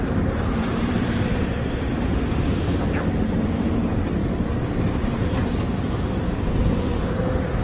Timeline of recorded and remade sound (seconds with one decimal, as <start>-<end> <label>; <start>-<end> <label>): 0.0-1.9 remade; 1.9-3.3 recorded; 3.3-4.2 remade; 4.2-5.0 recorded; 5.0-6.9 remade; 6.9-7.6 recorded